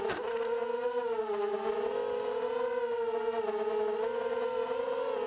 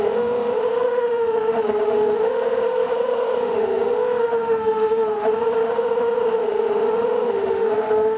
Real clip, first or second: first